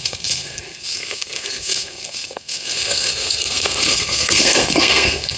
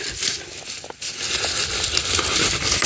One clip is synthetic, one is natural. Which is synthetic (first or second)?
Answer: first